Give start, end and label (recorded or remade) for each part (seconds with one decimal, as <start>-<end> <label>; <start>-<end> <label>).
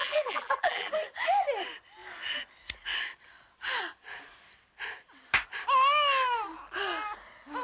0.0-0.9 remade; 0.9-7.6 recorded